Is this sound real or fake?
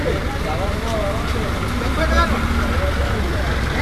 real